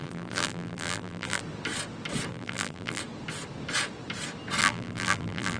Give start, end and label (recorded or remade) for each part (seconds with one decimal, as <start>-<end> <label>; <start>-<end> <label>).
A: 0.0-1.4 remade; 1.4-2.3 recorded; 2.3-3.0 remade; 3.0-4.6 recorded; 4.6-5.6 remade